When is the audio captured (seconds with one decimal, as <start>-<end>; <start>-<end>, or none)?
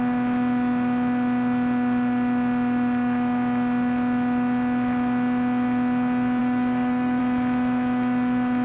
0.0-6.4; 7.2-8.6